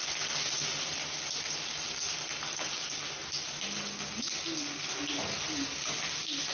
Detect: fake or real real